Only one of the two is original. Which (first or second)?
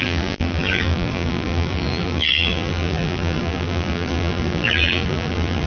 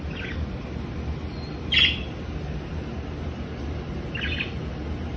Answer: second